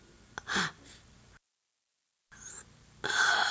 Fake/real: real